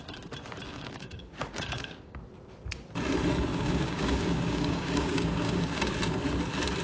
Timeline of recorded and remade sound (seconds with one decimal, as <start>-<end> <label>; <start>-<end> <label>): 0.0-0.7 recorded; 0.7-2.2 remade; 2.2-3.5 recorded; 3.5-5.9 remade; 5.9-6.8 recorded